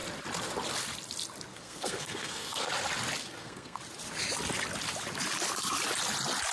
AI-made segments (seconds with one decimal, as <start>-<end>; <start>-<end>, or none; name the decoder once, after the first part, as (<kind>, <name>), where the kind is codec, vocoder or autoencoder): 1.5-2.7 (codec, SNAC); 3.2-3.8